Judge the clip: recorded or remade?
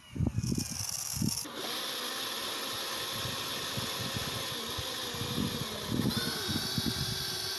recorded